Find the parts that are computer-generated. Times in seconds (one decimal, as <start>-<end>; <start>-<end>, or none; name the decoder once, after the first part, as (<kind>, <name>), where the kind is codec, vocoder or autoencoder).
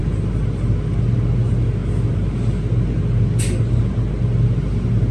none